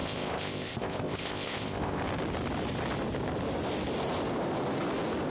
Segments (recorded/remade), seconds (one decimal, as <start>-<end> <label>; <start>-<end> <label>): 0.0-2.0 remade; 2.0-5.3 recorded